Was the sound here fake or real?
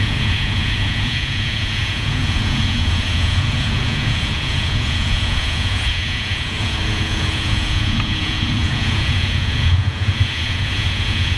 fake